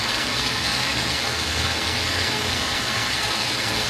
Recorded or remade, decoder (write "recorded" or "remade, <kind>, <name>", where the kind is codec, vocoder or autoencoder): remade, codec, SNAC